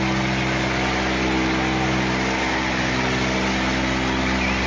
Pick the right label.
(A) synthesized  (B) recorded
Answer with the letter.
B